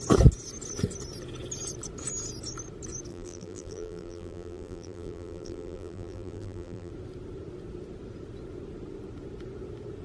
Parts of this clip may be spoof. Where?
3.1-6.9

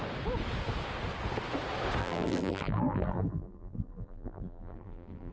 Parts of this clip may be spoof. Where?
2.0-5.3

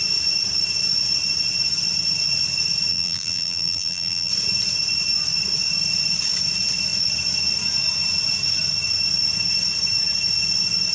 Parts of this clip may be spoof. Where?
2.9-4.3